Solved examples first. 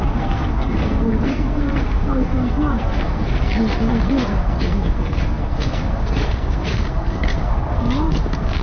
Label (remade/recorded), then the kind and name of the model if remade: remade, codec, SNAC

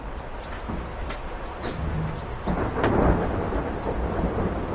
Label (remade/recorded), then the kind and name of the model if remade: recorded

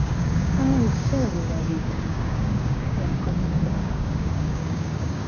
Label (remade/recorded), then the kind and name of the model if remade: remade, codec, DAC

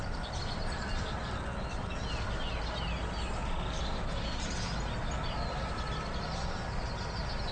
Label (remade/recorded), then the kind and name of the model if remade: recorded